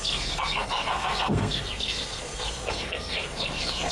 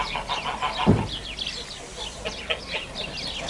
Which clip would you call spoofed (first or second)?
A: first